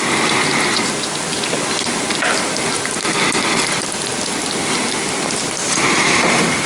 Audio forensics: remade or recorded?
recorded